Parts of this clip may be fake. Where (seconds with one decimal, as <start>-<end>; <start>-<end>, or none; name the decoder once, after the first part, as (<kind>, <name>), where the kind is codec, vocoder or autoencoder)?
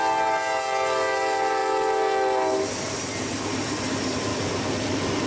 none